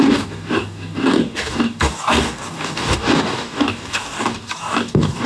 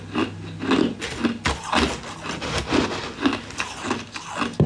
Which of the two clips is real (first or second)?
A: second